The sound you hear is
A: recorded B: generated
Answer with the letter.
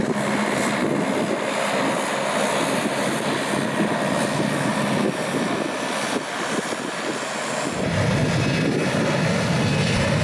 A